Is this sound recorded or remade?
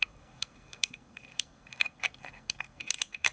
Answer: remade